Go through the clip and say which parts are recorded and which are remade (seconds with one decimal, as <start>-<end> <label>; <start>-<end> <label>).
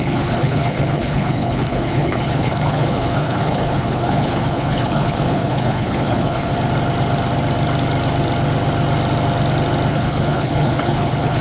0.0-6.5 remade; 6.5-9.9 recorded; 9.9-11.4 remade